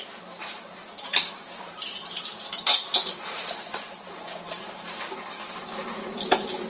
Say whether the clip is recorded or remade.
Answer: remade